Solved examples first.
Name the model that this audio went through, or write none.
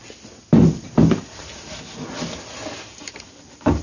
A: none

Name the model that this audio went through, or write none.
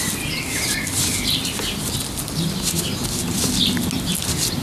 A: none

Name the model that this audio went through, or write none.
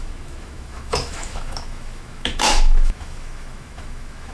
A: autoencoder, DAC-VAE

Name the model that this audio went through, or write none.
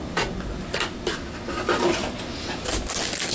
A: none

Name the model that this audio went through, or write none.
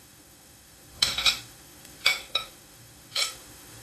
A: autoencoder, DAC-VAE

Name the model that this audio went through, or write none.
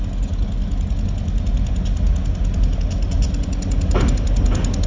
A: none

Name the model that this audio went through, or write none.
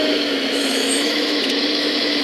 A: autoencoder, DAC-VAE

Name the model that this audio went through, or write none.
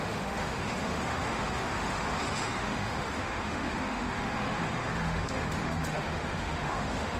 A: autoencoder, DAC-VAE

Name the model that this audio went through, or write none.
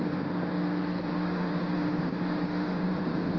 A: none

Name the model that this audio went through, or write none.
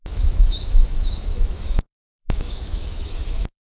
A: autoencoder, DAC-VAE